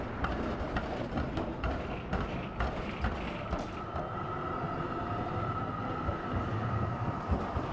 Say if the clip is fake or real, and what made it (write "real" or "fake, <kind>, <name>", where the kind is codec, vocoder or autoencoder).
real